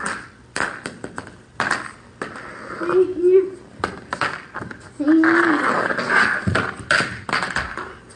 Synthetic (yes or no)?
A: no